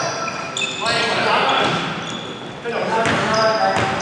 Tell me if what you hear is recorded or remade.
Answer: recorded